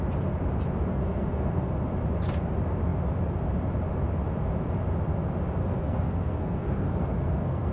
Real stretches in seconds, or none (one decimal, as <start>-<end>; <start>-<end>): 0.0-0.9; 1.7-5.6

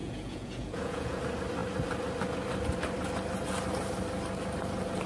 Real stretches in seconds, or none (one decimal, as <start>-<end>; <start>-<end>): 1.2-5.1

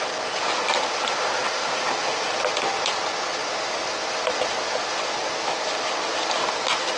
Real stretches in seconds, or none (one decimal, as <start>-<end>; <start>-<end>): 0.0-1.4; 2.5-7.0

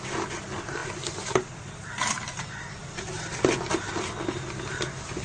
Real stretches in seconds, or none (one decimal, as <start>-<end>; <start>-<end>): 0.0-5.2

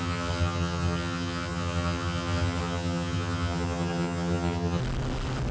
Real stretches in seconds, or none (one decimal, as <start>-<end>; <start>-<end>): 4.8-5.5